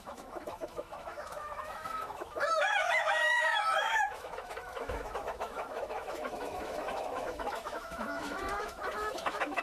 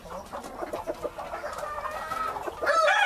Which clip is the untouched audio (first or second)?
second